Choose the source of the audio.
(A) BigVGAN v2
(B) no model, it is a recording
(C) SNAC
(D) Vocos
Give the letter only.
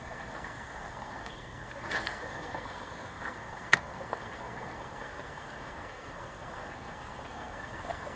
C